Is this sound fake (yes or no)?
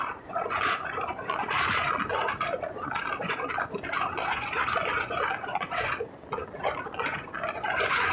yes